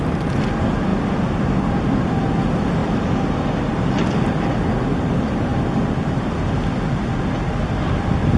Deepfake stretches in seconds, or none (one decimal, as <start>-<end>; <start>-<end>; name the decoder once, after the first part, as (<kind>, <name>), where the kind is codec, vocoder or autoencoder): none